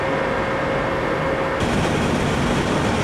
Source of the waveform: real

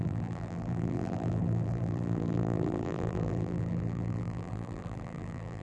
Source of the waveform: fake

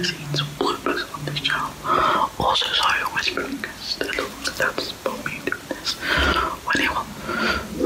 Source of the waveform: real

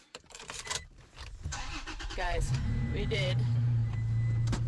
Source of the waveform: fake